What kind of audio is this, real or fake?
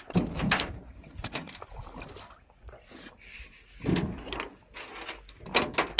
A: real